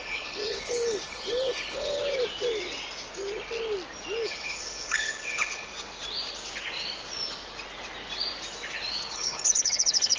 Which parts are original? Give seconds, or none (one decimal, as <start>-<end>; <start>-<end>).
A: 2.0-4.2; 5.7-9.1